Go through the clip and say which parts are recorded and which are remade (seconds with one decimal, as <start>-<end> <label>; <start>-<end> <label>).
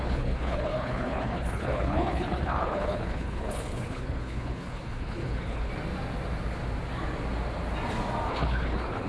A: 0.0-5.7 remade; 5.7-8.3 recorded; 8.3-9.1 remade